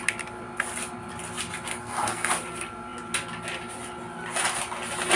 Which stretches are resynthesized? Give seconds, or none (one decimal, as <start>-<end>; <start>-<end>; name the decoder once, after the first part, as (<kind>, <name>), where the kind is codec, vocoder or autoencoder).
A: 1.7-2.3 (codec, SNAC)

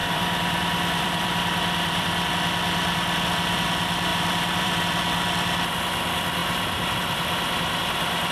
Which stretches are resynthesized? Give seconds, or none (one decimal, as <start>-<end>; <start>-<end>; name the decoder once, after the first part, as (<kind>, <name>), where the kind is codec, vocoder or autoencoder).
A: 0.0-2.3 (vocoder, BigVGAN v2); 4.1-4.8

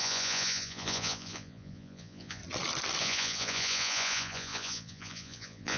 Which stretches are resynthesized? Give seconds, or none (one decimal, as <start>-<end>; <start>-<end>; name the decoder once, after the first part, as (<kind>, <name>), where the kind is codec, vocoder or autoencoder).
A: 0.0-2.4 (vocoder, Vocos); 3.0-5.8